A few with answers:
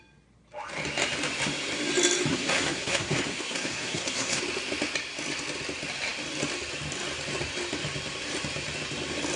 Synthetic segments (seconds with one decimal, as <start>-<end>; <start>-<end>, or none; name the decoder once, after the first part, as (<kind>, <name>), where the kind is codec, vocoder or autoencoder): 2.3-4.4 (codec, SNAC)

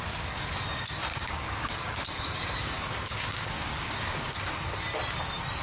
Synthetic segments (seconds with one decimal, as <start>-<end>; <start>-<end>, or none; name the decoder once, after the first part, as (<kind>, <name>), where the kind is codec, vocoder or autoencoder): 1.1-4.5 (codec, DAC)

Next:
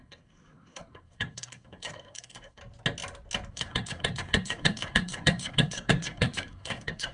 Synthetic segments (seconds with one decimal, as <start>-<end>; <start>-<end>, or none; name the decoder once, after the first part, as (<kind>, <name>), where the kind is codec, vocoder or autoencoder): 0.0-2.6 (codec, SNAC); 3.5-7.1

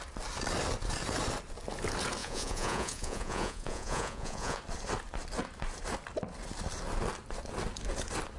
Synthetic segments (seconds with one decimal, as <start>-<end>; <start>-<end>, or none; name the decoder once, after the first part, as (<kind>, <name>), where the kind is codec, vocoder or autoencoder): 2.2-4.6 (vocoder, Vocos)

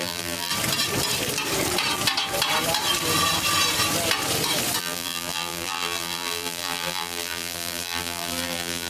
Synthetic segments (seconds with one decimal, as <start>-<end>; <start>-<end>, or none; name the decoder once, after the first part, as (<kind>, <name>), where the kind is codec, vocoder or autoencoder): 0.0-0.5 (vocoder, BigVGAN v2); 4.8-8.9

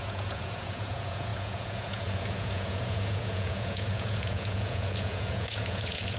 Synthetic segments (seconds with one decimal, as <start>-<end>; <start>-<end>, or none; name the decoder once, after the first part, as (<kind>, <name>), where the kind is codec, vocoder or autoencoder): 0.0-6.2 (vocoder, Vocos)

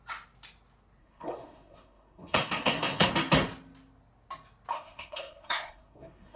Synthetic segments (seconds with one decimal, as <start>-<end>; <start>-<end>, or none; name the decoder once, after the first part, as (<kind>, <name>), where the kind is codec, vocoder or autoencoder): 1.0-3.1 (codec, SNAC); 4.7-6.4

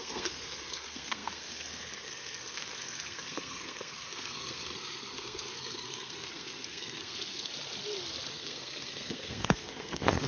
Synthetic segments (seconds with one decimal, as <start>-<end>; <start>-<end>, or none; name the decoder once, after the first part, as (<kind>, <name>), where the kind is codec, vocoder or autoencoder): 0.0-7.5 (codec, SNAC); 8.3-10.3